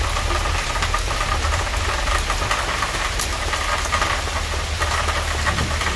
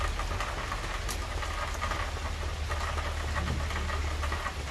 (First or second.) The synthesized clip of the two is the first